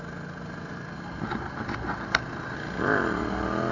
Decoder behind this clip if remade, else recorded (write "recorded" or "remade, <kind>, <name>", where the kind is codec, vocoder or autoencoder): recorded